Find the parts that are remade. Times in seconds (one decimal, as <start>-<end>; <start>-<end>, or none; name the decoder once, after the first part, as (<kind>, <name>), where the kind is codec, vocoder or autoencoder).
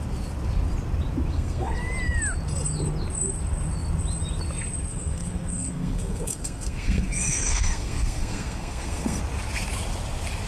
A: 1.3-1.8 (codec, SNAC); 4.9-9.2